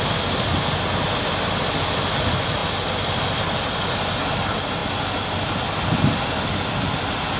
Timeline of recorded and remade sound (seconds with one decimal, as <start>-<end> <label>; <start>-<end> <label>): 0.0-7.4 recorded